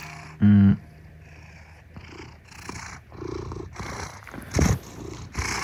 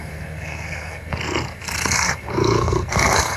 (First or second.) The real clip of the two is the first